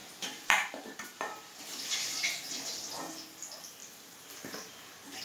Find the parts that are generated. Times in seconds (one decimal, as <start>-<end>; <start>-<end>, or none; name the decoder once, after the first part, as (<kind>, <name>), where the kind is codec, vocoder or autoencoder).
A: 0.0-3.1 (vocoder, BigVGAN v2); 3.8-5.2